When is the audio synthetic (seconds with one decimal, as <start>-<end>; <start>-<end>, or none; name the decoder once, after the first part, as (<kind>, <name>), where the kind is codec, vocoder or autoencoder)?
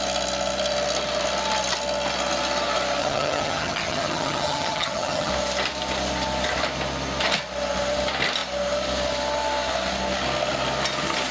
3.0-5.3 (vocoder, HiFi-GAN)